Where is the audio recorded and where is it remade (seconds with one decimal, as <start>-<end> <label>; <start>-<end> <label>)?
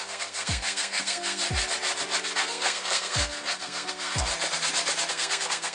0.0-1.4 remade; 1.4-2.4 recorded; 2.4-4.3 remade; 4.3-5.1 recorded; 5.1-5.7 remade